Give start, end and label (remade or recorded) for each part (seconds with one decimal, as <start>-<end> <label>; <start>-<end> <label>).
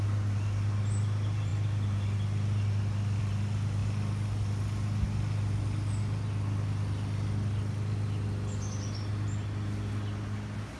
0.0-10.8 recorded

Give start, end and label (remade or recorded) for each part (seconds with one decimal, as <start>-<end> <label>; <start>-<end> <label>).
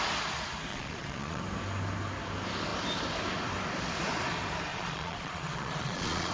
0.0-0.7 recorded; 0.7-1.4 remade; 1.4-4.7 recorded; 4.7-6.3 remade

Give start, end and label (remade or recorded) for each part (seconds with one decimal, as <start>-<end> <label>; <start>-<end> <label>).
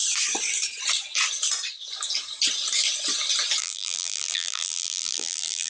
0.0-3.6 recorded; 3.6-5.7 remade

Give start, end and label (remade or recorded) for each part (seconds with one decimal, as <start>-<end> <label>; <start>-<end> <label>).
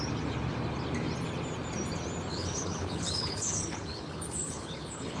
0.0-2.3 recorded; 2.3-5.2 remade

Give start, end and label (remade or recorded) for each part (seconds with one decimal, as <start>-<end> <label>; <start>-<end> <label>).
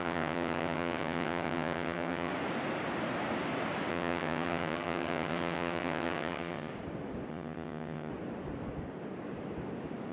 0.0-2.3 remade; 2.3-3.9 recorded; 3.9-6.7 remade; 6.7-7.3 recorded; 7.3-8.1 remade; 8.1-10.1 recorded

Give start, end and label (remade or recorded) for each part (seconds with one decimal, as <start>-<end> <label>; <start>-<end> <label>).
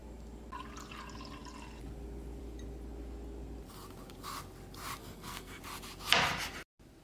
0.0-5.0 recorded; 5.0-5.6 remade; 5.6-7.0 recorded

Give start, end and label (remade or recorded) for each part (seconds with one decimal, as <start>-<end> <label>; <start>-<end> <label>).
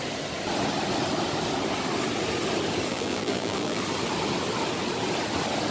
0.0-2.9 recorded; 2.9-3.8 remade; 3.8-5.7 recorded